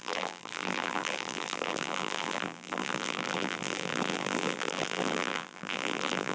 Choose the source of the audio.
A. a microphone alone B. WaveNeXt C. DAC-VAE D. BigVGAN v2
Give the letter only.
D